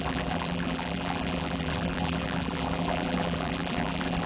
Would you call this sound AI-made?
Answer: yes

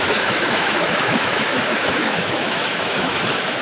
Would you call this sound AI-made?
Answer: yes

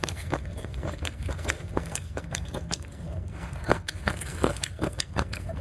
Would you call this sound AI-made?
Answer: yes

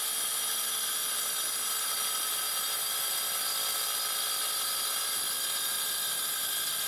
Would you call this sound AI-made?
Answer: no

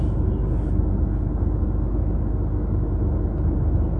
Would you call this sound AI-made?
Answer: no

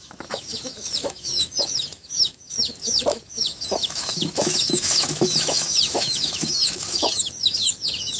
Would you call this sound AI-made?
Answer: yes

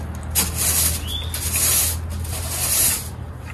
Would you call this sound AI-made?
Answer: no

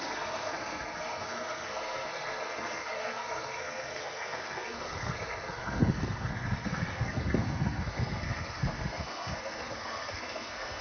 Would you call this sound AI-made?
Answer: yes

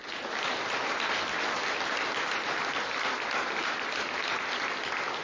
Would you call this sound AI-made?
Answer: no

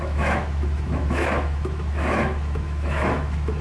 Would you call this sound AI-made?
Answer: yes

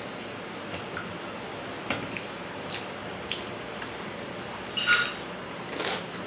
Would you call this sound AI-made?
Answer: no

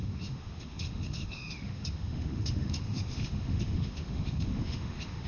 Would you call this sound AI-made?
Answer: yes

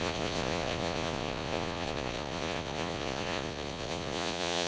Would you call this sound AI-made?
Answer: yes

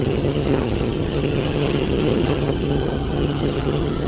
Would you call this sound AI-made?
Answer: yes